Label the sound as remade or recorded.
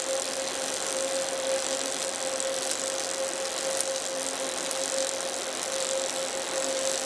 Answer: recorded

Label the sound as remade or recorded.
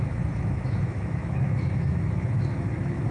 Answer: remade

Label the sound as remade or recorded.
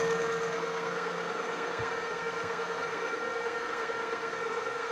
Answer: remade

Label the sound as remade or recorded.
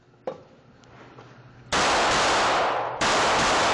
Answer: recorded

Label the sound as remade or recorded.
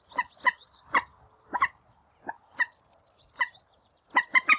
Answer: recorded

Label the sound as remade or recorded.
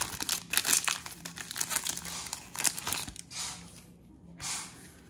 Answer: recorded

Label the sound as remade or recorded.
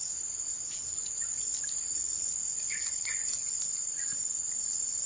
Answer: recorded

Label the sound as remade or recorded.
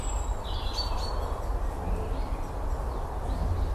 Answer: recorded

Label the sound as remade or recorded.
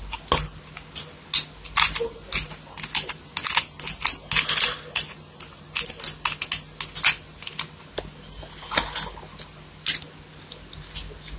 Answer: recorded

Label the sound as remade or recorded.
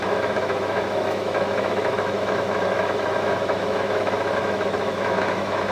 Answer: remade